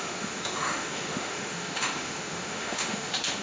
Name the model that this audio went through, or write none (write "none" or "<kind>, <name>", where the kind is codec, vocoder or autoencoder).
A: autoencoder, DAC-VAE